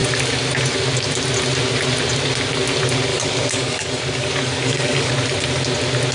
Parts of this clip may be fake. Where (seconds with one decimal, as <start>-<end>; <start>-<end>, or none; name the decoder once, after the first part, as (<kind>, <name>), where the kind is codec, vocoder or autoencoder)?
3.1-5.1 (codec, DAC)